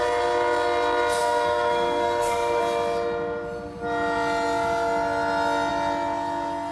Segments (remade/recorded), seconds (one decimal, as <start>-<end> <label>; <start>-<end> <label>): 0.0-1.2 recorded; 1.2-2.6 remade; 2.6-6.7 recorded